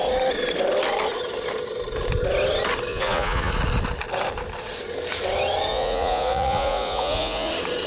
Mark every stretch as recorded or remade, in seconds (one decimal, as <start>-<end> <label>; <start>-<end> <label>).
0.0-2.9 recorded; 2.9-3.5 remade; 3.5-5.7 recorded; 5.7-7.5 remade; 7.5-7.9 recorded